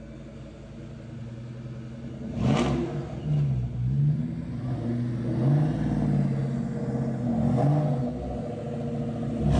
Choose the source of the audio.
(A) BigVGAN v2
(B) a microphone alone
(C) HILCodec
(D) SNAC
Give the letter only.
B